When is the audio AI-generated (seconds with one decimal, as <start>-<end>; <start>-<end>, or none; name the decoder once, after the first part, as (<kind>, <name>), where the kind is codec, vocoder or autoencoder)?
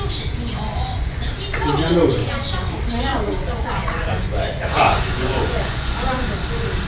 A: 0.5-1.3 (vocoder, Vocos); 2.2-2.7; 3.1-6.2